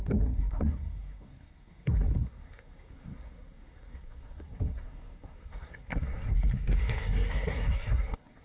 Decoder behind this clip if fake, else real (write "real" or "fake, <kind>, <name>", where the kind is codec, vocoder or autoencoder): fake, codec, SNAC